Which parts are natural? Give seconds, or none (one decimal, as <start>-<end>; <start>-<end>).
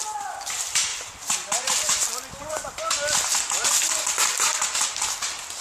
0.0-5.6